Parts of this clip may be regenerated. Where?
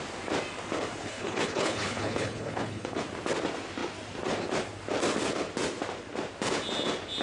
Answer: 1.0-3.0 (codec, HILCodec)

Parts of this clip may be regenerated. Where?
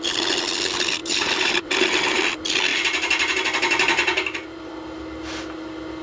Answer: 1.0-2.2 (vocoder, BigVGAN v2); 2.7-4.7